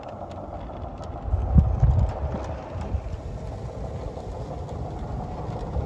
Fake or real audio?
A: real